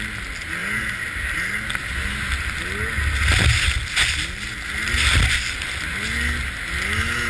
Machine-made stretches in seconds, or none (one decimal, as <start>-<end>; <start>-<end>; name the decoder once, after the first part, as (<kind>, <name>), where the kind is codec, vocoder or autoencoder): none